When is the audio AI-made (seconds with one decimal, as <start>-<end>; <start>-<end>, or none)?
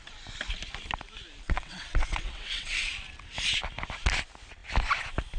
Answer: 1.4-2.9